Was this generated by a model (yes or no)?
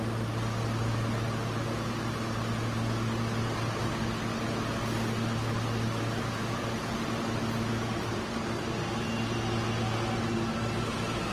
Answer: no